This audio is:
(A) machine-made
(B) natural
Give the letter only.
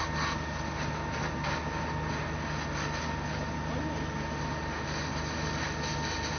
B